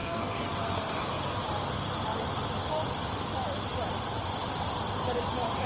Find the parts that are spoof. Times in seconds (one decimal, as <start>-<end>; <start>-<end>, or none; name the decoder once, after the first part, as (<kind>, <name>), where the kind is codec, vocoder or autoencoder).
0.0-1.0 (codec, SNAC)